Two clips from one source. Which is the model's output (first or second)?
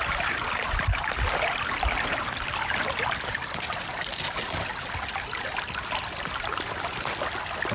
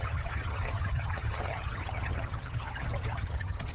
second